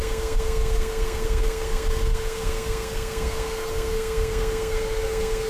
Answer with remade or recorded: remade